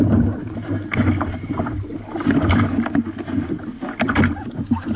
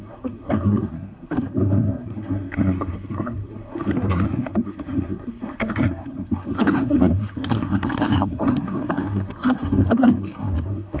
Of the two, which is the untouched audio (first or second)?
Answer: first